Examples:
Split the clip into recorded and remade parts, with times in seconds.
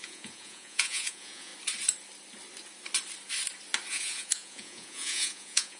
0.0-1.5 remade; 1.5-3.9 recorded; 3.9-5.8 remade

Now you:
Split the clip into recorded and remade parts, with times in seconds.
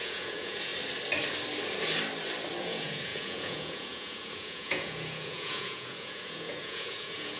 0.0-0.7 remade; 0.7-2.6 recorded; 2.6-7.4 remade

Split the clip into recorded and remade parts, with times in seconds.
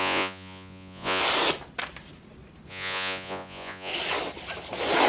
0.0-1.2 remade; 1.2-2.7 recorded; 2.7-3.9 remade; 3.9-5.1 recorded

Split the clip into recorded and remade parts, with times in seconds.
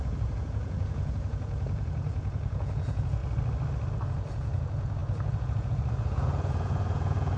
0.0-3.2 remade; 3.2-3.9 recorded; 3.9-7.4 remade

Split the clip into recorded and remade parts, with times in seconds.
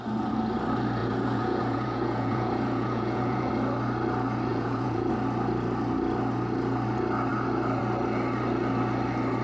0.0-1.0 recorded; 1.0-3.5 remade; 3.5-4.5 recorded; 4.5-5.1 remade; 5.1-9.4 recorded